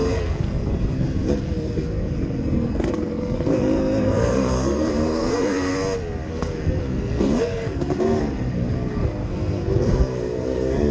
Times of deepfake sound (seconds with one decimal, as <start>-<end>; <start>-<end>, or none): 0.0-5.7; 6.3-10.9